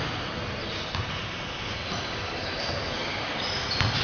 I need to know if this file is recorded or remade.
recorded